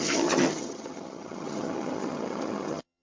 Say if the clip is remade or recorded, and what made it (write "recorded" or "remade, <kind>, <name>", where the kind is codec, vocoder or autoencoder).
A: remade, vocoder, HiFi-GAN